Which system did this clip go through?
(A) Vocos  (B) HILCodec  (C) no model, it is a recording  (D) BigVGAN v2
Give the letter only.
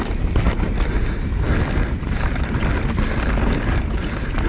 C